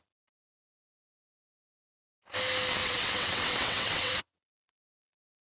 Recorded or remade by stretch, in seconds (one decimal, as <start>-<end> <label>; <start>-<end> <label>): 0.0-2.8 recorded; 2.8-5.5 remade